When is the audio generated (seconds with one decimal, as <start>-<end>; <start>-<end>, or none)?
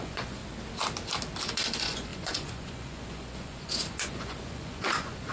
0.0-0.4; 1.5-5.3